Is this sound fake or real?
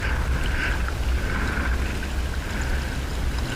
real